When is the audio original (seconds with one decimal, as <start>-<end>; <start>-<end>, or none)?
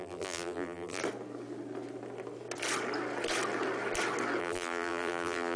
1.0-4.4